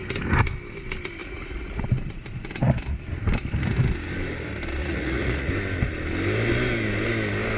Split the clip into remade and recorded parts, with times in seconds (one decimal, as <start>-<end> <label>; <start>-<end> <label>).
0.0-1.2 recorded; 1.2-1.8 remade; 1.8-4.8 recorded; 4.8-5.5 remade; 5.5-7.6 recorded